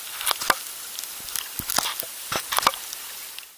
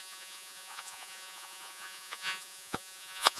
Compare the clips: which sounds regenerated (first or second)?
second